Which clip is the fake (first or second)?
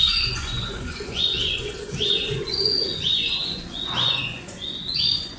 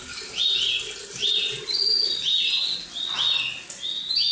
first